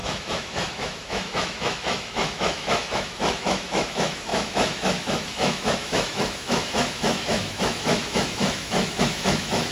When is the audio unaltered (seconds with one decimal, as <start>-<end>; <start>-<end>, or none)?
none